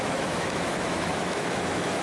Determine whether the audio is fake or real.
fake